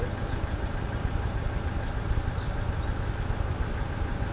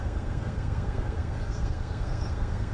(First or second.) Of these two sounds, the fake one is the second